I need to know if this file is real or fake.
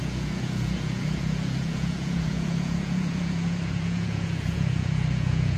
fake